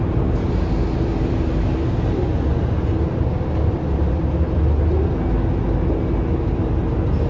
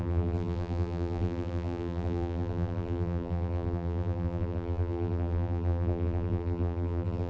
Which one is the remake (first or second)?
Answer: second